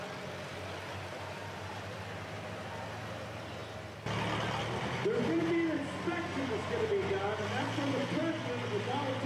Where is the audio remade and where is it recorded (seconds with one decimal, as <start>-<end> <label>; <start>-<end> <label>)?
0.0-1.4 recorded; 1.4-2.0 remade; 2.0-9.3 recorded